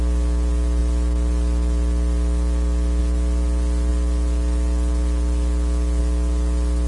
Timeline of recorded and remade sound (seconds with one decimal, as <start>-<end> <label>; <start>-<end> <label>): 0.0-6.9 recorded